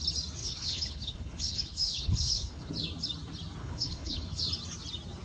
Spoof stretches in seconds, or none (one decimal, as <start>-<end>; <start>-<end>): 0.4-2.7; 3.6-4.4

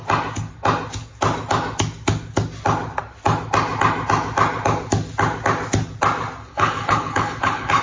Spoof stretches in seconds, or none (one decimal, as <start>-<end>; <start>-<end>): 6.5-7.8

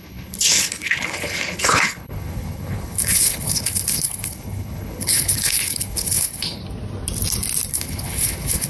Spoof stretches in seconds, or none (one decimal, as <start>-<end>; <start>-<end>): 0.0-6.6; 7.7-8.7

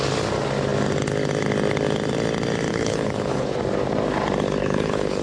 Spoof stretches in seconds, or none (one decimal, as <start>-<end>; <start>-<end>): 2.7-3.6; 4.6-5.2